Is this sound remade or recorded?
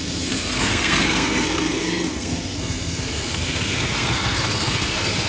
remade